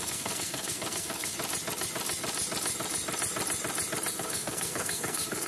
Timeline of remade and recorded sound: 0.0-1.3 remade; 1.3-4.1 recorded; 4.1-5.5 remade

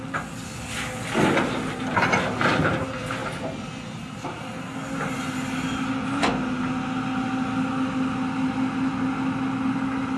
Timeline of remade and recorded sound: 0.0-10.2 recorded

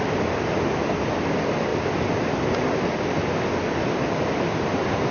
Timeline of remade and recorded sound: 0.0-1.7 recorded; 1.7-3.5 remade; 3.5-5.1 recorded

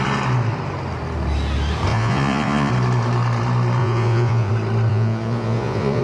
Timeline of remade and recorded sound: 0.0-1.9 recorded; 1.9-2.7 remade; 2.7-3.8 recorded; 3.8-4.5 remade; 4.5-4.9 recorded; 4.9-6.0 remade